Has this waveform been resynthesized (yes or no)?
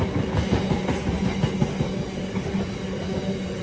no